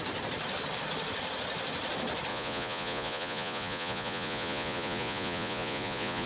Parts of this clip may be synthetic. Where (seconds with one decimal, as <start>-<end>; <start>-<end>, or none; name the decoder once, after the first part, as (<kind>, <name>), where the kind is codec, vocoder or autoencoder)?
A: 2.3-6.3 (vocoder, Vocos)